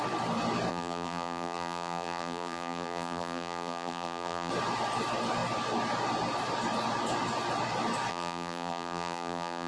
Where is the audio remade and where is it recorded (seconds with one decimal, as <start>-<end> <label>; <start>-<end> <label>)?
0.0-0.7 recorded; 0.7-4.5 remade; 4.5-8.1 recorded; 8.1-9.7 remade